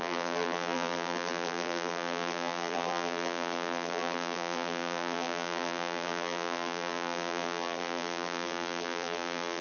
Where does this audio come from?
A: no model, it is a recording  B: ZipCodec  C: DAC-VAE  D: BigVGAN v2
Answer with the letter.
D